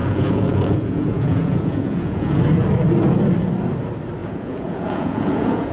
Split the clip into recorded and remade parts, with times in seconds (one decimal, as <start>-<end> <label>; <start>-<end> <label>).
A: 0.0-2.4 remade; 2.4-4.2 recorded; 4.2-5.7 remade